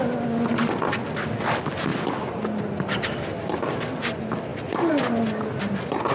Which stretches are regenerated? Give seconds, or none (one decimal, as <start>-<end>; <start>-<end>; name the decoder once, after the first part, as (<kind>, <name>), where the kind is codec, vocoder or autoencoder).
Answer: none

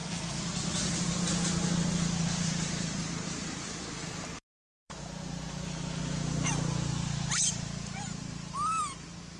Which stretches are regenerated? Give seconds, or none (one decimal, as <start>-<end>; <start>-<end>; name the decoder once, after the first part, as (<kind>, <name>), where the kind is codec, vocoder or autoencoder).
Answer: 2.4-9.4 (vocoder, BigVGAN v2)

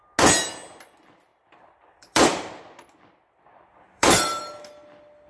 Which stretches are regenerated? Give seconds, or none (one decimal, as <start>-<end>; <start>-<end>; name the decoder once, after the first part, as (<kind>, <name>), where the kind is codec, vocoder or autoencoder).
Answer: 1.3-2.6 (vocoder, BigVGAN v2); 3.7-4.4

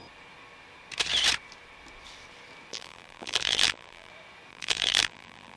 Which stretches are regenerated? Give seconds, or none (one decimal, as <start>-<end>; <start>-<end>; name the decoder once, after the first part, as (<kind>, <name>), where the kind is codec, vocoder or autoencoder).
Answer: 2.7-4.1 (vocoder, BigVGAN v2); 4.5-5.6

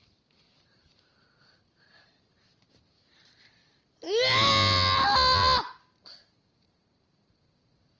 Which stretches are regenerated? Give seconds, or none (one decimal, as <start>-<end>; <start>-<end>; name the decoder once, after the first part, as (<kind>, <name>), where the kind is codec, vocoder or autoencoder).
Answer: 0.0-3.6 (vocoder, BigVGAN v2); 6.0-8.0

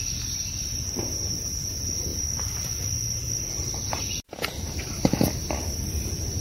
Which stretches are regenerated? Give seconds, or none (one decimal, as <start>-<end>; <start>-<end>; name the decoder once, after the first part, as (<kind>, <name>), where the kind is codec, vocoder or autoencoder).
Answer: 0.0-2.1 (vocoder, BigVGAN v2); 5.6-6.4

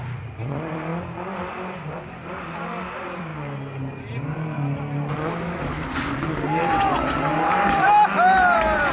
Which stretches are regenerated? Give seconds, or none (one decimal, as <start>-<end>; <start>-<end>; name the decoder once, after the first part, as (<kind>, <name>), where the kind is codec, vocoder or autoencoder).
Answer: 0.0-0.9 (vocoder, BigVGAN v2); 2.8-3.3; 7.7-8.9